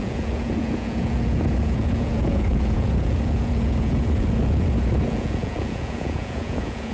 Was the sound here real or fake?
fake